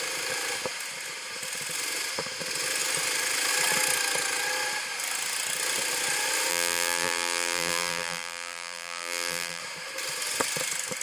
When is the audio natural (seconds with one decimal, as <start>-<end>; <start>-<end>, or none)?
0.0-6.5; 9.6-11.0